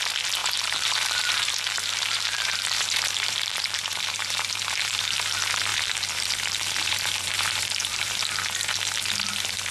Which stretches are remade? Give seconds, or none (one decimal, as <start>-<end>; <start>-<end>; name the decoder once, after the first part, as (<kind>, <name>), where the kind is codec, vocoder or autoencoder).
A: 0.4-5.0 (vocoder, BigVGAN v2); 5.7-8.2